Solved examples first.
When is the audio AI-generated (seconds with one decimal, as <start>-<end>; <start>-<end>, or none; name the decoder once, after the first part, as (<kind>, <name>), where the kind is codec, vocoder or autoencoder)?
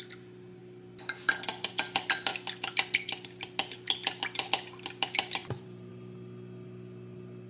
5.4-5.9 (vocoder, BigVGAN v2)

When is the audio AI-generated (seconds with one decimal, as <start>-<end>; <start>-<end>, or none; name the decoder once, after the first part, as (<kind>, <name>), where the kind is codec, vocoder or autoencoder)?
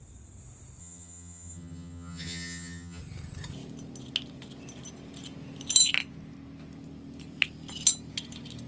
0.8-3.0 (vocoder, HiFi-GAN)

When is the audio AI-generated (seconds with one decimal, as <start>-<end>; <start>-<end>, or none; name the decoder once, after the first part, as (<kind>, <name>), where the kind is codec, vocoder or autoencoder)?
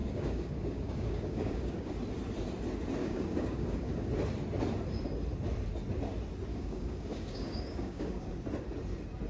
0.0-1.9 (codec, DAC); 3.0-4.1; 6.5-8.3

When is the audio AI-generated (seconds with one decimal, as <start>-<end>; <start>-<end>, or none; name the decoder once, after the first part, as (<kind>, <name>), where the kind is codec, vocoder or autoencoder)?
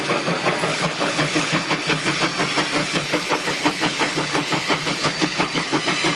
0.7-2.2 (codec, HILCodec); 2.8-5.8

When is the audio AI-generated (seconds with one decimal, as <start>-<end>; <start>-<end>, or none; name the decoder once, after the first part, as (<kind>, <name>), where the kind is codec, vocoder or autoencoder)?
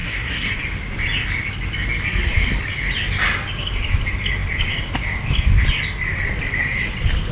0.0-0.5 (codec, SNAC)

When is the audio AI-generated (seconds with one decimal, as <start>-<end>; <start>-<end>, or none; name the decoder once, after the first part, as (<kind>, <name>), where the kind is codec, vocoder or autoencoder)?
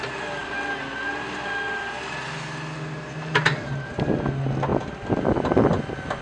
none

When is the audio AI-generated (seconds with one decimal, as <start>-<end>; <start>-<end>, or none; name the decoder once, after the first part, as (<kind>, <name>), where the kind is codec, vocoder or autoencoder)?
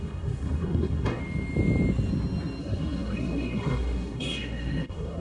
0.0-1.2 (codec, SNAC); 2.6-5.2